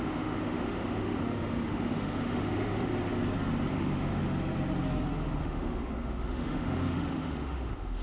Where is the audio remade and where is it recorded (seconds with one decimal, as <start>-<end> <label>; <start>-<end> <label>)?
0.0-2.9 remade; 2.9-3.7 recorded; 3.7-4.2 remade; 4.2-5.4 recorded; 5.4-8.0 remade